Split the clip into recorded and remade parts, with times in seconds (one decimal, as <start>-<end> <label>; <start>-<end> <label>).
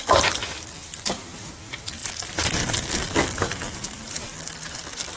0.0-0.8 recorded; 0.8-1.5 remade; 1.5-2.0 recorded; 2.0-2.9 remade; 2.9-5.2 recorded